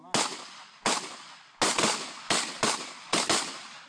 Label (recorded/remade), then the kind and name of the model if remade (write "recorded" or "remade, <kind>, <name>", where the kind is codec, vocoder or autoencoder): recorded